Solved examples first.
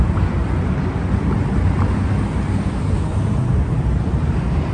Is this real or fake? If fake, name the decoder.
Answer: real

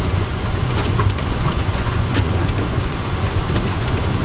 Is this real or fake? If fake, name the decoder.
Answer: fake, vocoder, Vocos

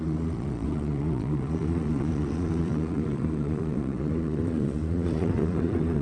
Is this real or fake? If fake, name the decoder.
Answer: fake, vocoder, Vocos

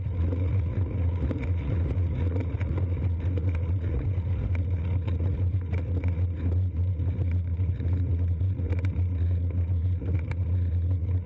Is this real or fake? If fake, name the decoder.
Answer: fake, vocoder, Vocos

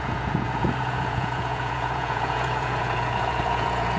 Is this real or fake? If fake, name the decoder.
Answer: fake, vocoder, Vocos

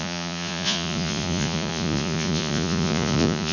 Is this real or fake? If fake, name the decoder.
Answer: fake, vocoder, Vocos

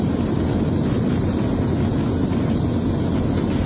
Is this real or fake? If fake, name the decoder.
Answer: real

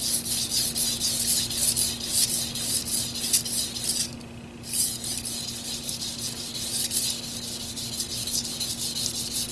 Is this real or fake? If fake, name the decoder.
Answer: real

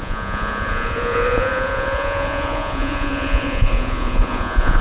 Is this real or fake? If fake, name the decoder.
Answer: fake, vocoder, Vocos